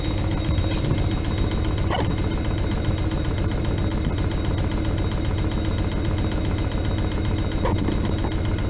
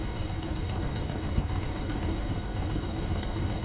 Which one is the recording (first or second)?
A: first